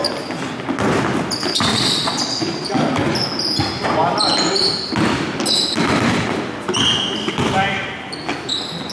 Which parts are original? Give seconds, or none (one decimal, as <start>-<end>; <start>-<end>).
0.0-1.7; 2.4-8.9

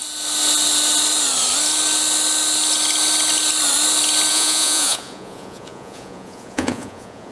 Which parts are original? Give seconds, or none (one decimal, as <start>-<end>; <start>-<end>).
0.0-4.3

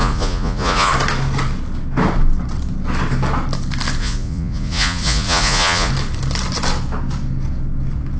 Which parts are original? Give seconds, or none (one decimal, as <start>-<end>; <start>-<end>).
0.9-4.0; 5.9-8.2